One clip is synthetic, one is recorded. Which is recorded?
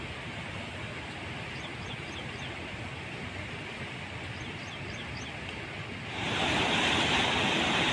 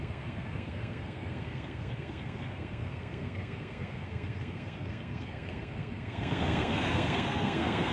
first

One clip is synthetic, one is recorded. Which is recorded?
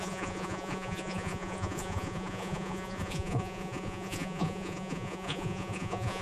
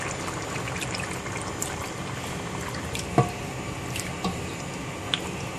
second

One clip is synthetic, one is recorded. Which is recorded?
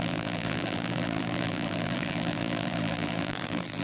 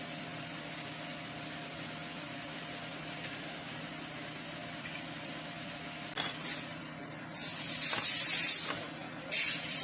second